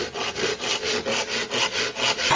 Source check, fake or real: real